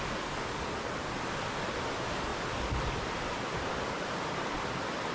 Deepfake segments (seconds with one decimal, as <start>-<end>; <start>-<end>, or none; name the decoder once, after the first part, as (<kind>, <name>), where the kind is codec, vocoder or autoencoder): none